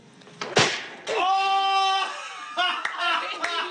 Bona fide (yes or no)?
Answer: yes